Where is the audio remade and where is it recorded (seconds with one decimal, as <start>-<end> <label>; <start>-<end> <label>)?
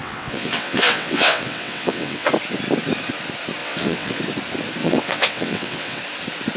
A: 0.0-2.3 remade; 2.3-3.6 recorded; 3.6-4.2 remade; 4.2-4.8 recorded; 4.8-6.0 remade; 6.0-6.6 recorded